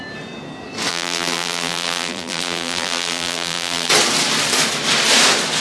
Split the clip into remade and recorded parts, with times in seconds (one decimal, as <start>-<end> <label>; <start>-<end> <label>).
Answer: 0.0-0.9 recorded; 0.9-3.9 remade; 3.9-5.6 recorded